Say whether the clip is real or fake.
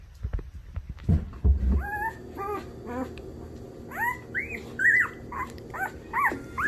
real